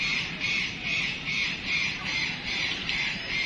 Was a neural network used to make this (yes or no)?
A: yes